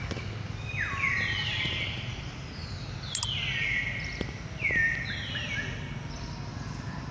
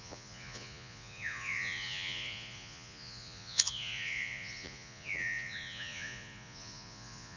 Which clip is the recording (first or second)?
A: first